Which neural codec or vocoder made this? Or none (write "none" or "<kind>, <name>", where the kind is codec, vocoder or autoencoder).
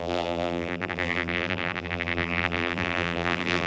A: vocoder, BigVGAN v2